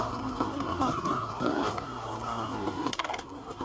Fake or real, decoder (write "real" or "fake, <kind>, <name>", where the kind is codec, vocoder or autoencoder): fake, codec, SNAC